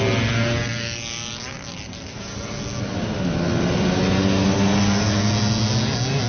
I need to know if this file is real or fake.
real